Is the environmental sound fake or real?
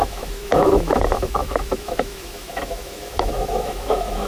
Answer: fake